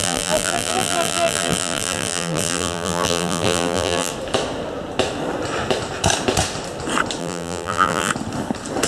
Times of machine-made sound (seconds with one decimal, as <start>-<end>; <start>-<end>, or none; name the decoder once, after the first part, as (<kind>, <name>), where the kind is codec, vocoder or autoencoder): 0.0-4.1 (vocoder, BigVGAN v2); 7.2-8.1